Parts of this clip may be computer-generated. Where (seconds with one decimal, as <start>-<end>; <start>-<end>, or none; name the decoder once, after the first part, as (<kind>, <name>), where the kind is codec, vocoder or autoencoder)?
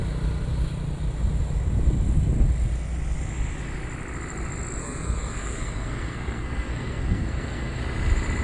4.8-7.8 (codec, SNAC)